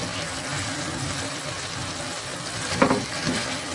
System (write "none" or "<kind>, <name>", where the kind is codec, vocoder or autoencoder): none